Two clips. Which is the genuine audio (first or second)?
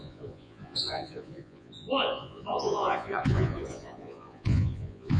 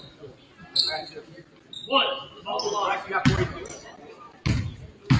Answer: second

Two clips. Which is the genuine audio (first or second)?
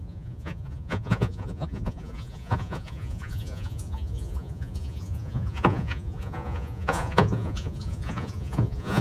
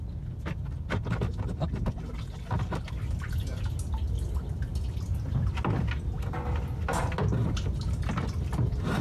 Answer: second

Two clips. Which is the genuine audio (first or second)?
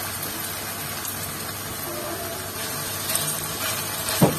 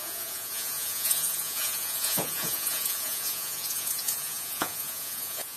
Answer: first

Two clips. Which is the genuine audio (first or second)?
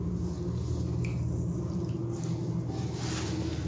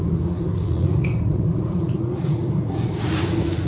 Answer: first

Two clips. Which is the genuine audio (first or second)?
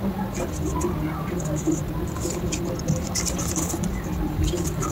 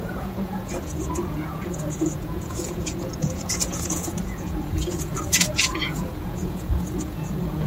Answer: first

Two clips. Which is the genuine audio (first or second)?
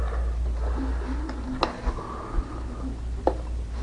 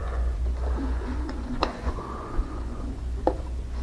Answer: first